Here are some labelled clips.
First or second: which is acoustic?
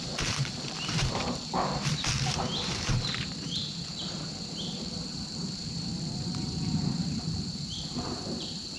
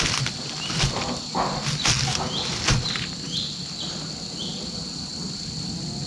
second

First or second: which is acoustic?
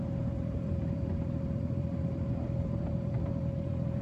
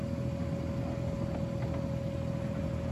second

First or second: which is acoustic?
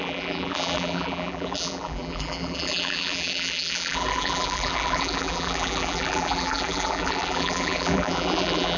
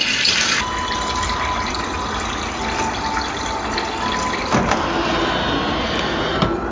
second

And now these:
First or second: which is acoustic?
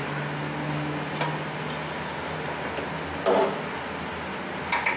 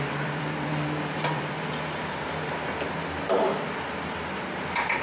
first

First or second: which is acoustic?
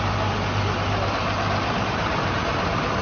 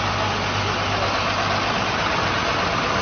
second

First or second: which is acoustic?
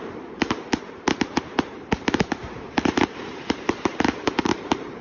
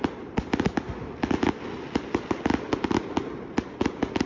second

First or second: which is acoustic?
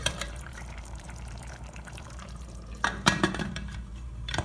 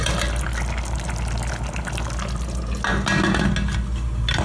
second